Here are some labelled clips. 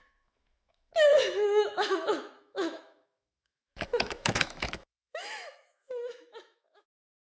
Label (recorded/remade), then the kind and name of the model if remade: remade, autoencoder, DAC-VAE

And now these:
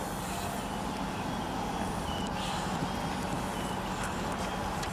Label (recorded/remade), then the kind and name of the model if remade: recorded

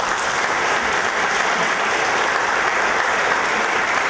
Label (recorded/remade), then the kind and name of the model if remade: remade, vocoder, BigVGAN v2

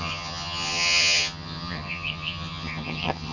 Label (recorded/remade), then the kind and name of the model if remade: remade, vocoder, HiFi-GAN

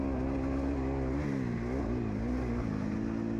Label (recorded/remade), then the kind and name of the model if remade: recorded